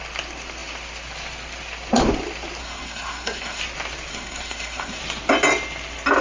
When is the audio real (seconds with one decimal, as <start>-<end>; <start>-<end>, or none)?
0.0-2.6; 3.6-4.1; 5.0-6.2